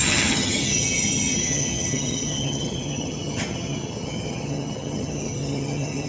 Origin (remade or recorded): remade